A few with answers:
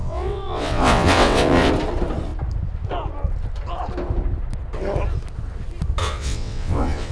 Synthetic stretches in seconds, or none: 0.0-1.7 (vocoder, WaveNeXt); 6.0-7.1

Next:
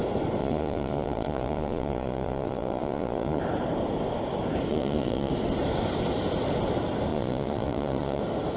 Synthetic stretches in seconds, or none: 0.4-3.4 (vocoder, Vocos); 4.7-5.3; 7.1-8.2

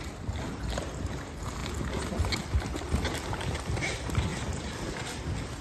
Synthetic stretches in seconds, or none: none

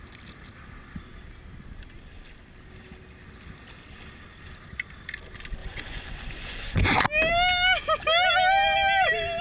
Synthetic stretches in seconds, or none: 5.6-6.9 (vocoder, Vocos)

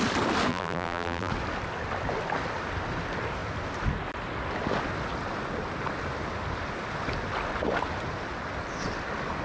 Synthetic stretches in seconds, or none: 0.5-1.3 (vocoder, BigVGAN v2)